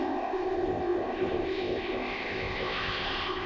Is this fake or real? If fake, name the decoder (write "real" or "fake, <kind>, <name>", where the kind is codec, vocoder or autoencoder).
fake, codec, ZipCodec